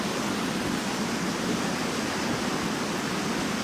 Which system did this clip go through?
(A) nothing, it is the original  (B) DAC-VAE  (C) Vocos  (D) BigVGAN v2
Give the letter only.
A